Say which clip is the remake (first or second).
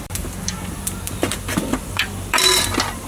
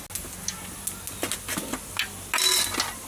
first